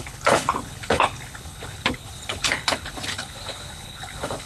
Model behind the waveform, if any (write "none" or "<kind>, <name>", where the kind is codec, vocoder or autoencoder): codec, HILCodec